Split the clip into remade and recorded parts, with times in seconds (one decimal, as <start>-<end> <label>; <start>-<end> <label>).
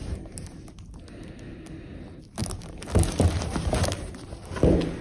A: 0.0-0.5 remade; 0.5-2.4 recorded; 2.4-4.4 remade; 4.4-5.0 recorded